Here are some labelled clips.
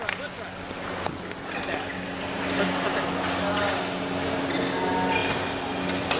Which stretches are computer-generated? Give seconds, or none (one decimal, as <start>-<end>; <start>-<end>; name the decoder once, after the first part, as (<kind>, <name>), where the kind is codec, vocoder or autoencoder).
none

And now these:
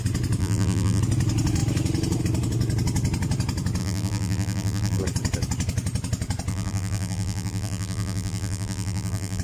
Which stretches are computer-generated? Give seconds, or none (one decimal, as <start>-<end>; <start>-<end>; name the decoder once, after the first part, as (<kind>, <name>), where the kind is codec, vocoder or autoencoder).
0.4-1.0 (vocoder, BigVGAN v2); 3.8-5.0; 6.5-9.4

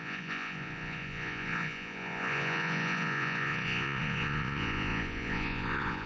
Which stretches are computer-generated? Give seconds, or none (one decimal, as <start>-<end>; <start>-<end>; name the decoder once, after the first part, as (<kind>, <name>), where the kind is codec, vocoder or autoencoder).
0.0-6.1 (vocoder, Vocos)